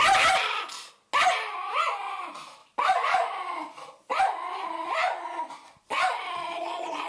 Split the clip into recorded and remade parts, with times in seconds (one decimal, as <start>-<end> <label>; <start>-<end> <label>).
0.0-7.1 recorded